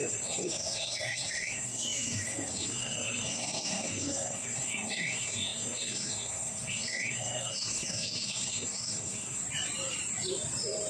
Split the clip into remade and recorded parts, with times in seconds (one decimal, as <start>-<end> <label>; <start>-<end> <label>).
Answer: 0.0-9.4 remade; 9.4-10.9 recorded